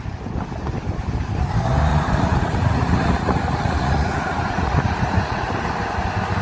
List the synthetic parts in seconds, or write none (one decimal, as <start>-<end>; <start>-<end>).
1.9-5.7